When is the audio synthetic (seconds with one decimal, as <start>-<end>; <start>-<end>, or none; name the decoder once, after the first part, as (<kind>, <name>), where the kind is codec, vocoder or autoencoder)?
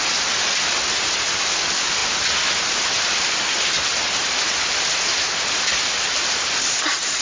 none